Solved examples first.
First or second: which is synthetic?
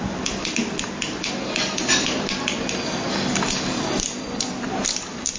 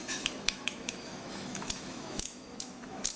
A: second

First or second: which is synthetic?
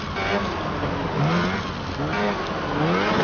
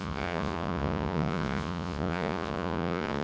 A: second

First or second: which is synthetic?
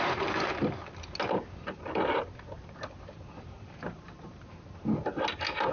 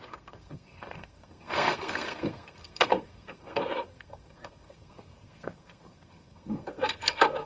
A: second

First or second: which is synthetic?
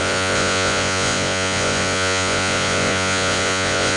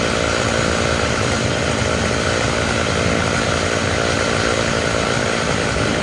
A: first